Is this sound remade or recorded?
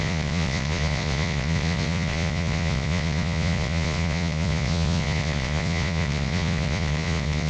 remade